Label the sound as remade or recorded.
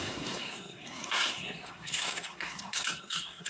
remade